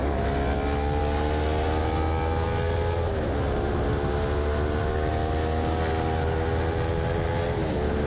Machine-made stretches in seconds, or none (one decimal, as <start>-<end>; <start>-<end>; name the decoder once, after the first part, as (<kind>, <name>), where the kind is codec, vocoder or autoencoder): none